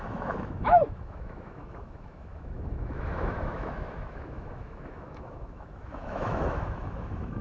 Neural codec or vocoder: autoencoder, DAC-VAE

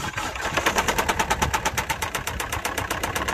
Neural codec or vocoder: none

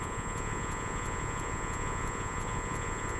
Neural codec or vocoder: vocoder, Vocos